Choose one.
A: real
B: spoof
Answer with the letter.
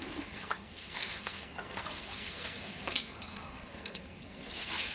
B